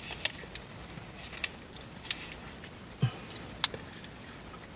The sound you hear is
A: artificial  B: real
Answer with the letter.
B